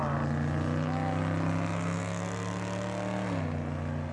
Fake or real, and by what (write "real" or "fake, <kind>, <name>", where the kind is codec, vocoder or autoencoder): real